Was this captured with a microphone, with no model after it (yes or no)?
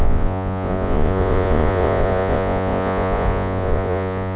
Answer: no